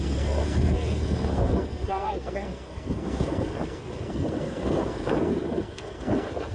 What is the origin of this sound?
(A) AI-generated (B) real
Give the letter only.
A